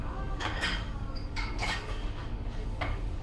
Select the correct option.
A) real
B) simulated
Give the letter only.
B